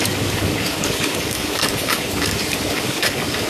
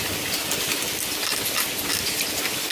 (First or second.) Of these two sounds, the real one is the second